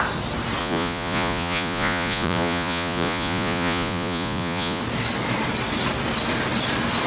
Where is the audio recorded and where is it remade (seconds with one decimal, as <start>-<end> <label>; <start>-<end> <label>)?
0.0-0.6 recorded; 0.6-4.8 remade; 4.8-7.1 recorded